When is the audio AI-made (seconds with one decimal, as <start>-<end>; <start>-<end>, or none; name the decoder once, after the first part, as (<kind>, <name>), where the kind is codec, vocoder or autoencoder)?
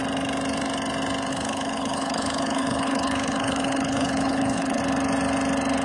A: 1.3-4.8 (codec, HILCodec)